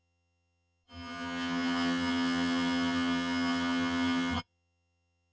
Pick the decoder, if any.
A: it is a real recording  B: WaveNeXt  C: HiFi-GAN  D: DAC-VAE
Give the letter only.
C